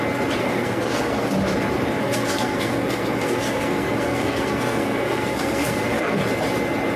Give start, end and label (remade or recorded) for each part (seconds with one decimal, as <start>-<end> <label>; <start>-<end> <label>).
0.0-0.4 recorded; 0.4-1.3 remade; 1.3-2.0 recorded; 2.0-6.2 remade; 6.2-7.0 recorded